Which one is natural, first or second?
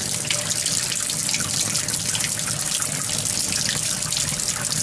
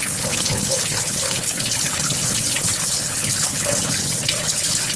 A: first